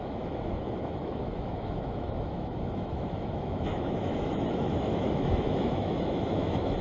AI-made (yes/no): yes